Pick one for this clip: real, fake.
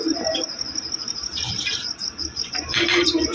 fake